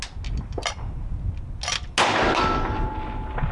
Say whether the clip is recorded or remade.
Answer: recorded